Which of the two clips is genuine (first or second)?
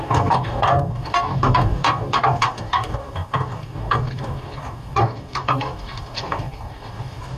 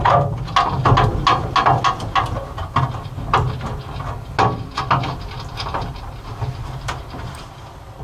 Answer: second